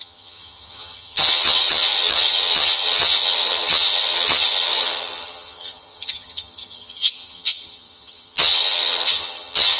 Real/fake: fake